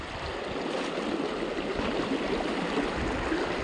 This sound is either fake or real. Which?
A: real